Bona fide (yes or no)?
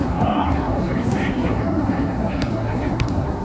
no